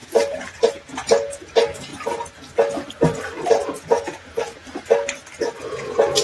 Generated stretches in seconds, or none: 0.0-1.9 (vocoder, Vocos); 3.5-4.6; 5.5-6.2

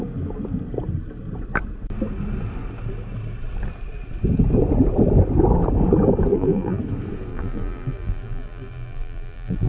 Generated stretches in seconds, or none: 6.3-6.8 (vocoder, BigVGAN v2); 7.3-9.7